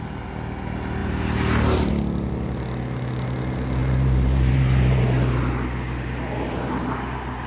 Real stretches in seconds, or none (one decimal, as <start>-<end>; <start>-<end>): 0.0-1.0; 1.9-3.8; 5.0-7.5